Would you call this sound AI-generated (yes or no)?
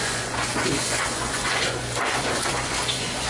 yes